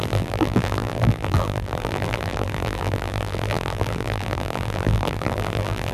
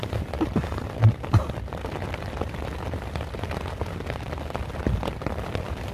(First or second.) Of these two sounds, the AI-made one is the first